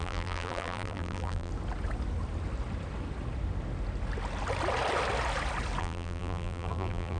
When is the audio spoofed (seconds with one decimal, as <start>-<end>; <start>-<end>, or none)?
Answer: 0.0-1.5; 5.8-7.2